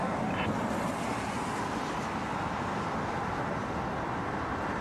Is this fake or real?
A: real